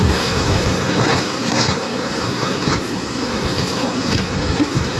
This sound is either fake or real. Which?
fake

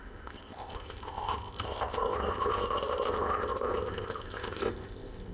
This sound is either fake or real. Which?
fake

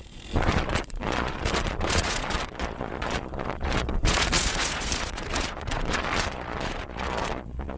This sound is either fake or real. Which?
fake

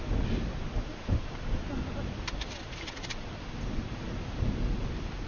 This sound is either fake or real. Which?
real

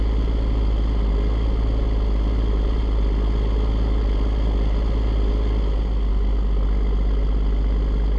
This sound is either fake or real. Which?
real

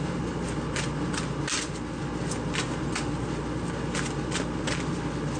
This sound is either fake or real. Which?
real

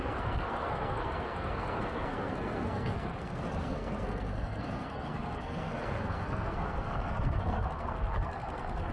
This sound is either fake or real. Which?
fake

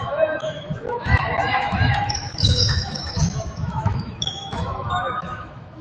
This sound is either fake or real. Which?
fake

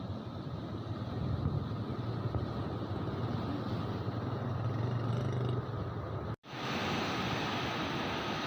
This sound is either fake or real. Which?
real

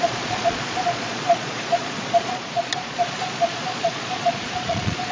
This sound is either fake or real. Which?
fake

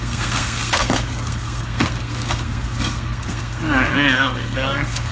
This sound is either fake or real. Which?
fake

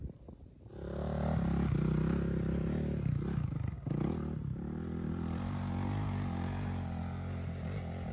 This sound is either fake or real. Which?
real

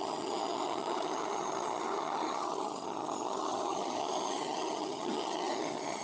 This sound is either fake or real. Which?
fake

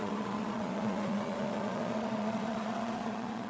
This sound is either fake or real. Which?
fake